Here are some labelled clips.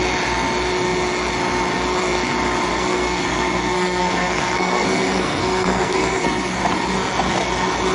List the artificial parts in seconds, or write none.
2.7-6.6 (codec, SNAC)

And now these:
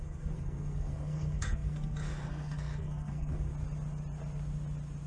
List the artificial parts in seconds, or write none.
0.0-3.5 (codec, SNAC)

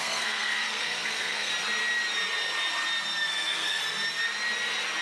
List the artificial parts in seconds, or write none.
0.0-1.5 (codec, SNAC); 3.3-3.8